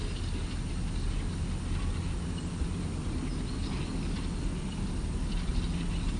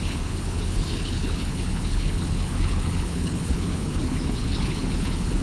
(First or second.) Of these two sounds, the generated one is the second